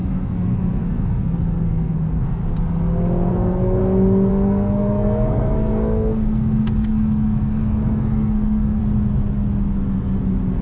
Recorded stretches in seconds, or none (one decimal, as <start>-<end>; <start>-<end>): 2.4-3.3; 3.8-4.3; 8.8-10.6